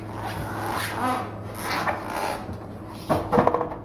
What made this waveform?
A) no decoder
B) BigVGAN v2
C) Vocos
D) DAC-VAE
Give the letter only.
A